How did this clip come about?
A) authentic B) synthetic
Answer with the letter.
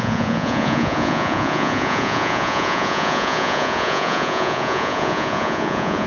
B